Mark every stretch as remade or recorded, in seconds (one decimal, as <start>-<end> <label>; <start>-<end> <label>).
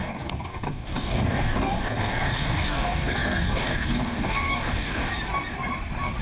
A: 0.0-5.1 remade; 5.1-6.2 recorded